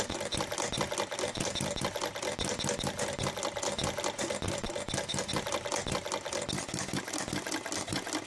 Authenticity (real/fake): real